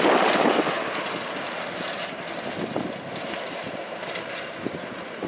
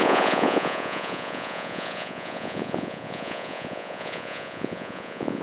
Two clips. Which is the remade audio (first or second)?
second